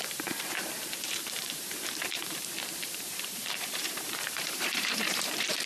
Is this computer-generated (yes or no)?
yes